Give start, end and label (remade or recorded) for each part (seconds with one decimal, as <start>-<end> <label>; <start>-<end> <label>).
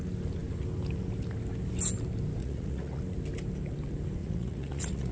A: 0.0-2.4 recorded; 2.4-3.0 remade; 3.0-4.2 recorded; 4.2-5.1 remade